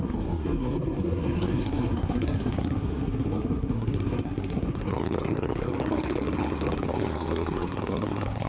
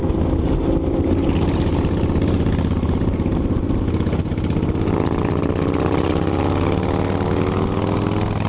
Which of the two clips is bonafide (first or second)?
second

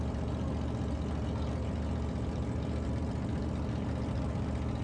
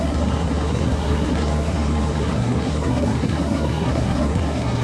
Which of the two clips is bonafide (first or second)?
first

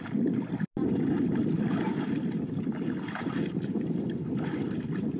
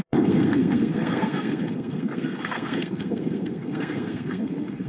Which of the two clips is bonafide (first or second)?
first